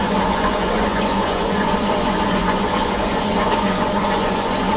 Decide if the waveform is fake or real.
fake